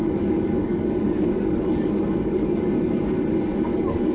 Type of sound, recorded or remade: remade